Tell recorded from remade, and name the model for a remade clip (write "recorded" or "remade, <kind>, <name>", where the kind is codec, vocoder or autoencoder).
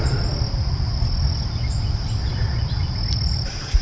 recorded